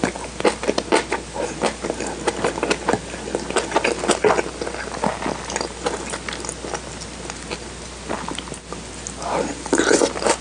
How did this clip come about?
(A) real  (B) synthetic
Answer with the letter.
A